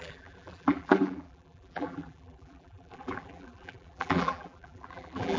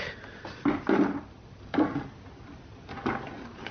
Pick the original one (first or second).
second